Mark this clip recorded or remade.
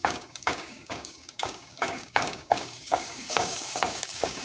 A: remade